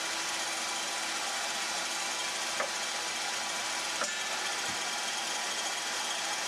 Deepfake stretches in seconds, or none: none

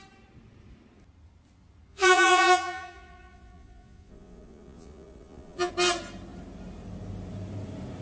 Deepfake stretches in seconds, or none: 1.9-5.7 (vocoder, Vocos)

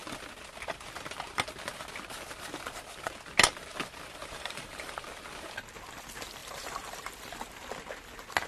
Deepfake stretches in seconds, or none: 4.2-4.9 (vocoder, BigVGAN v2); 6.4-7.1

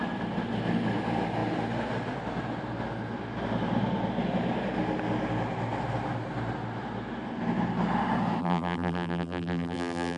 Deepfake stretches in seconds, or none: 8.4-10.2 (vocoder, BigVGAN v2)

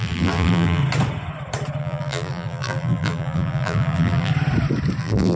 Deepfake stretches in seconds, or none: 0.0-0.8 (vocoder, BigVGAN v2); 1.8-4.3; 5.0-5.4

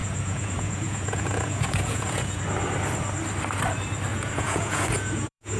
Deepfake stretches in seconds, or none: 0.0-2.4 (vocoder, Vocos); 4.1-5.6

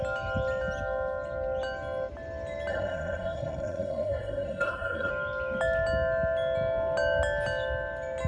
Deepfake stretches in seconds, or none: 2.7-5.1 (codec, SNAC)